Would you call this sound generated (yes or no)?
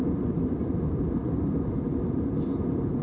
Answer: yes